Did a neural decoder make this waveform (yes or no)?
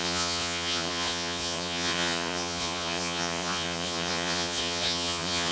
yes